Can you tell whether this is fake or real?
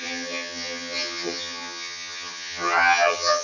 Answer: fake